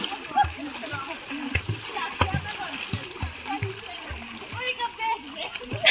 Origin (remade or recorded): recorded